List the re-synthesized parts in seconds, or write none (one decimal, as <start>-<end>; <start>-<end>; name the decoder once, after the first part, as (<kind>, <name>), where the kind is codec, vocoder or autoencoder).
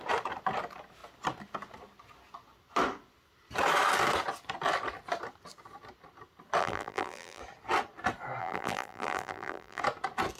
6.6-7.4 (vocoder, BigVGAN v2); 8.4-9.8